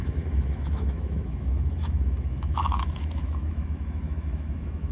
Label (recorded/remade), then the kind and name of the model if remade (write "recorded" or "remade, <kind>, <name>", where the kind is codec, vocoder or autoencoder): remade, autoencoder, DAC-VAE